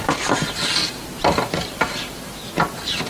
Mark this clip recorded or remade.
recorded